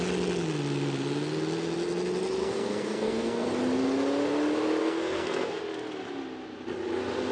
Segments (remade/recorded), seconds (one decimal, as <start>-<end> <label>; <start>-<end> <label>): 0.0-2.4 recorded; 2.4-3.5 remade; 3.5-4.8 recorded; 4.8-5.6 remade; 5.6-7.3 recorded